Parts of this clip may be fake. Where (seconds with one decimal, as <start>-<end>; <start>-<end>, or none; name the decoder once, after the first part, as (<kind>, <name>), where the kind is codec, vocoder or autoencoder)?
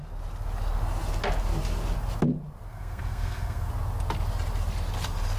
2.7-3.7 (codec, SNAC)